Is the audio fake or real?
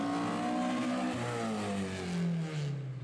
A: real